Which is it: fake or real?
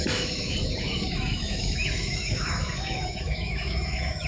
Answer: fake